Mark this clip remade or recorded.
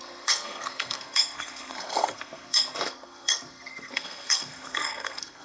remade